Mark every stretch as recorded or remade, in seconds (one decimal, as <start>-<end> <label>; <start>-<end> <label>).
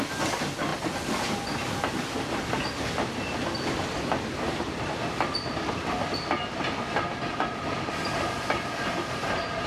0.0-9.7 recorded